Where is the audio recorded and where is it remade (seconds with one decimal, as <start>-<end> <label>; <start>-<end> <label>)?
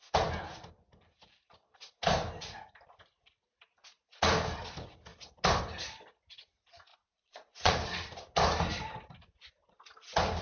0.0-6.9 recorded; 6.9-7.7 remade; 7.7-10.4 recorded